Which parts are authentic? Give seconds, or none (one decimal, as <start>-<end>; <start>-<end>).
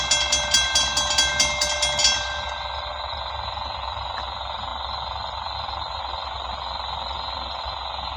0.0-8.2